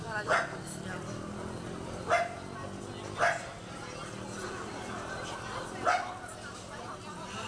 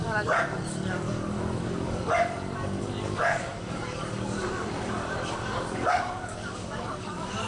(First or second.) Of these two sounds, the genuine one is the first